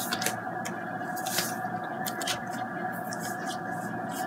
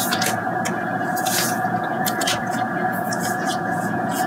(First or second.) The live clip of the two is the first